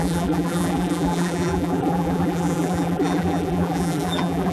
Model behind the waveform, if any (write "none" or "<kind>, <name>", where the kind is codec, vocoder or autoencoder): vocoder, BigVGAN v2